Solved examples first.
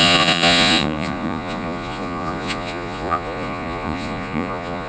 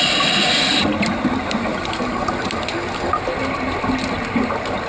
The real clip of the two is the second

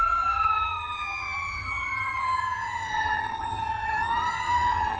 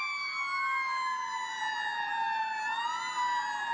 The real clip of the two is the second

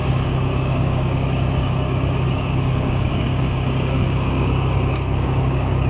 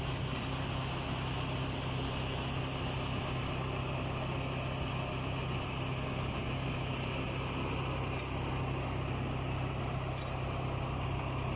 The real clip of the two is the second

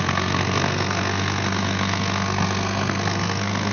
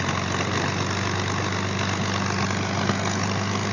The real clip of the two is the second